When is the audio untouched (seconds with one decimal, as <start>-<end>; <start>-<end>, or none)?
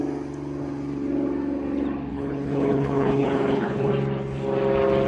0.0-2.1; 3.9-5.1